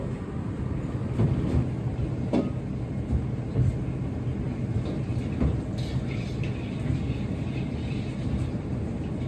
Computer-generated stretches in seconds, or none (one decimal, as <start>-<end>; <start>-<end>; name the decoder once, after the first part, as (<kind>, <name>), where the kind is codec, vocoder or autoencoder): none